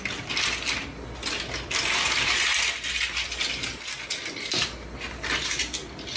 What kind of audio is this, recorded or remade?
recorded